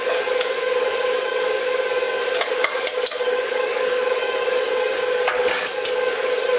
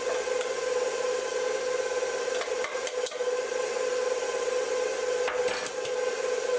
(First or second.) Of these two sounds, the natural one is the second